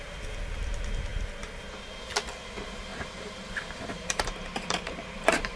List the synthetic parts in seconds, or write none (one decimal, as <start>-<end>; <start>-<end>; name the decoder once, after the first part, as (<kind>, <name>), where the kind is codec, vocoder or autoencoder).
2.9-5.6 (vocoder, BigVGAN v2)

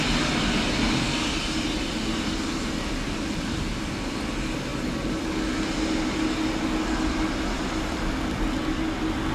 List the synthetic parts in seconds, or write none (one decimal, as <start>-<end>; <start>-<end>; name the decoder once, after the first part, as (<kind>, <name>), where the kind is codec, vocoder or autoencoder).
none

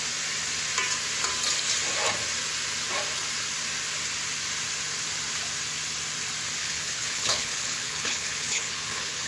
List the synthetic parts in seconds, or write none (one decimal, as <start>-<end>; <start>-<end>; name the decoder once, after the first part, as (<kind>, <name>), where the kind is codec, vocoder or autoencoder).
6.6-9.3 (codec, HILCodec)

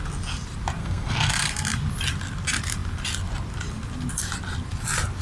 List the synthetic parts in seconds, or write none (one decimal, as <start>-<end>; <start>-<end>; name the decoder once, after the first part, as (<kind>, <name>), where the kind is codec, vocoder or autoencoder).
0.8-1.3 (codec, SNAC)

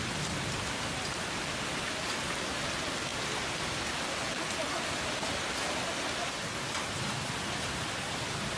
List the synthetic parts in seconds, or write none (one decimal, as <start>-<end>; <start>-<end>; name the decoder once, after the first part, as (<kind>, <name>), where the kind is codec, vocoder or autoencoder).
none

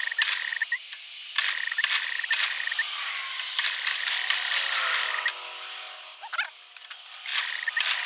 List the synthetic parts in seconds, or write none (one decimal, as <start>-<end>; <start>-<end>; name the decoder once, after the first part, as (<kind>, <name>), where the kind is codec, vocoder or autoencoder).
none

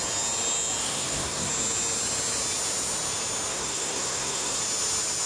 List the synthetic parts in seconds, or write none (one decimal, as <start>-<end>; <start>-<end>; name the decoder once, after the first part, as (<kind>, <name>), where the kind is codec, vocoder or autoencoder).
0.8-1.5 (codec, SNAC); 3.5-4.6